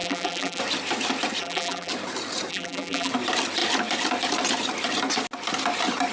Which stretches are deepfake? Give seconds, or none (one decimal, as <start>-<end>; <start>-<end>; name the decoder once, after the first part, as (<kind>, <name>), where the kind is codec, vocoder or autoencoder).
0.0-0.6 (vocoder, BigVGAN v2); 1.4-1.9; 2.5-3.1